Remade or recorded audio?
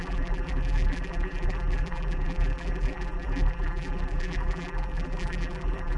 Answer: remade